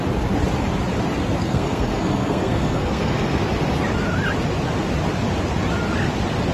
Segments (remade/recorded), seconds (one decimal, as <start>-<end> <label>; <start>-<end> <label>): 0.0-1.4 recorded; 1.4-3.4 remade; 3.4-6.5 recorded